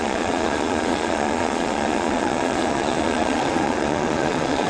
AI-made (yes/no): yes